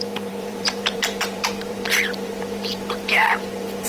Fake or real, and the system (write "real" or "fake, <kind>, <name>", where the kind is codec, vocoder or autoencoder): fake, vocoder, BigVGAN v2